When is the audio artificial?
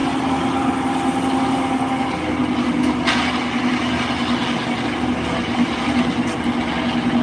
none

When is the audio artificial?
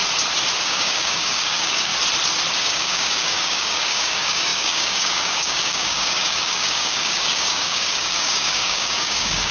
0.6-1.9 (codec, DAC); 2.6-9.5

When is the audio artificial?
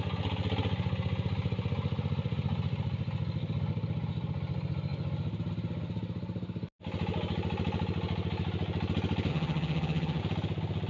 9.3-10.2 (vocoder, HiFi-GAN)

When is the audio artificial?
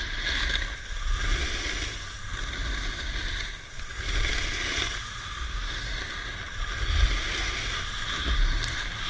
none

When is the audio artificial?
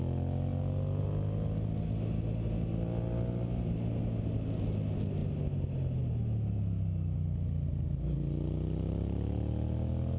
none